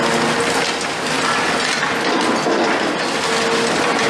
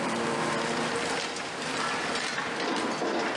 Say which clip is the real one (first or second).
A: first